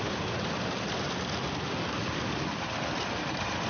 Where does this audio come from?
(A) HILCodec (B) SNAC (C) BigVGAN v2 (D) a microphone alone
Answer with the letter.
D